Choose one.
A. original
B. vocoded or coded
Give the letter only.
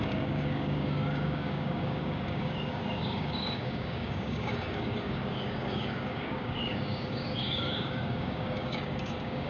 B